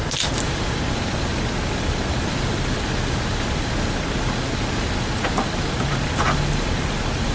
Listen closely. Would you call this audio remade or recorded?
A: recorded